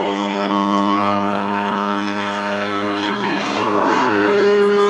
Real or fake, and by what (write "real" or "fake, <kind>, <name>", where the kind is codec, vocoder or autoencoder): fake, codec, SNAC